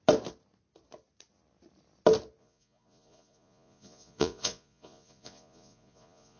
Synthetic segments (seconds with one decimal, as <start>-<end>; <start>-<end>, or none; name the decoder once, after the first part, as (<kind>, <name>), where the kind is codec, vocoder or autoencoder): 2.4-6.4 (vocoder, Vocos)